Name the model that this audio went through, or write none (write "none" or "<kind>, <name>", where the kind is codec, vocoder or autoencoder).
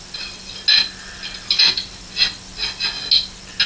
none